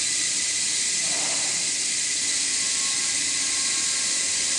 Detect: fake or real fake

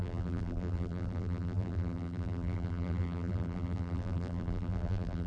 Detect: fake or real fake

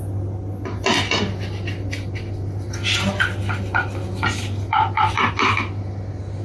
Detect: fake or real real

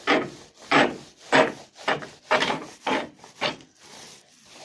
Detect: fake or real fake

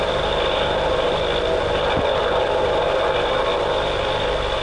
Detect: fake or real real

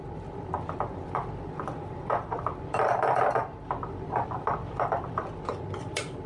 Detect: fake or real fake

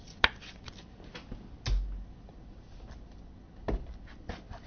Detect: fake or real real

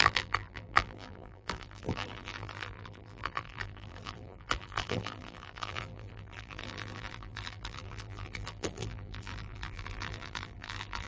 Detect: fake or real fake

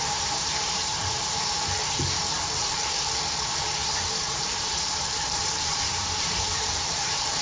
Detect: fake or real fake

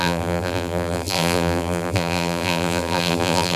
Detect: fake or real fake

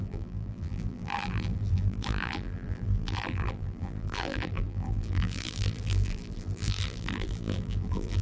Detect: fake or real fake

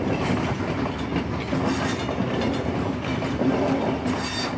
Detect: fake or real real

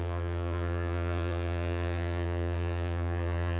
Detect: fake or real fake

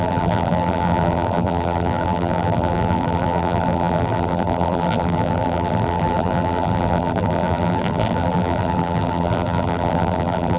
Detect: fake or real fake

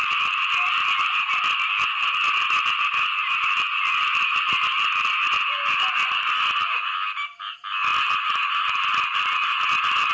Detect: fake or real real